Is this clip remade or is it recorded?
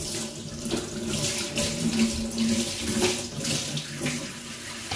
recorded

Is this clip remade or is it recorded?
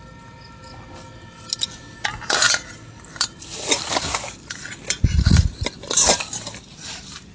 recorded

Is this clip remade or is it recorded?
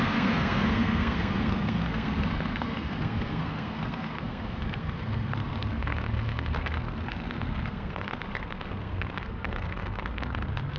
remade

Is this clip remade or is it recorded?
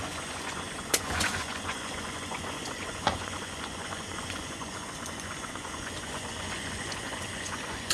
remade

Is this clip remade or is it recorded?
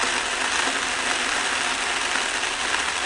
recorded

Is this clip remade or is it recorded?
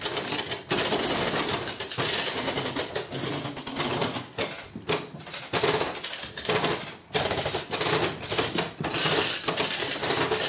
recorded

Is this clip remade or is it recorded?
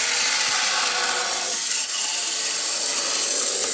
recorded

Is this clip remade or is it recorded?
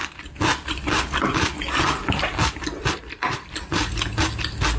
recorded